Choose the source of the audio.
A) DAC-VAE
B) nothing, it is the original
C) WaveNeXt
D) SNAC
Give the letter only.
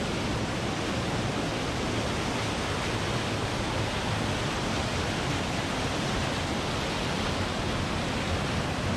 B